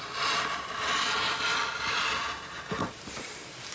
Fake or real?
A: real